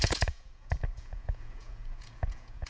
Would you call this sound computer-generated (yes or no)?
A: yes